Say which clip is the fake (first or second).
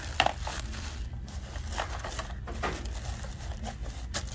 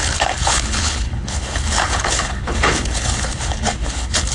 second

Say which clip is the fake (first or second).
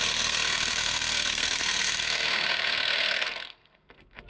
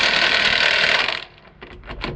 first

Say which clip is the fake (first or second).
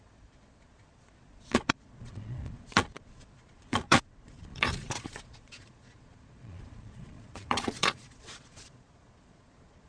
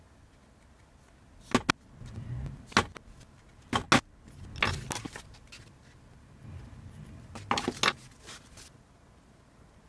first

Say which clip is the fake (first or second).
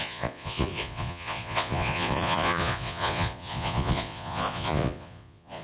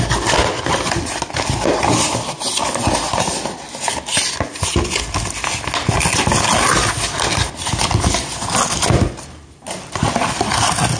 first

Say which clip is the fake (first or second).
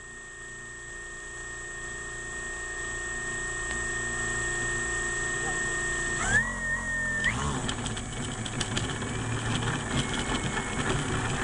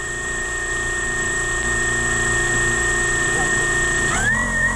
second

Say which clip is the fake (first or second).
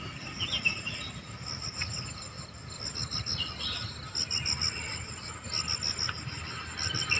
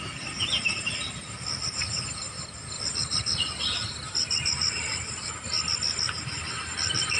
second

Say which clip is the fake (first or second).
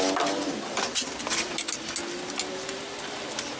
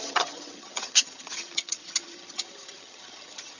second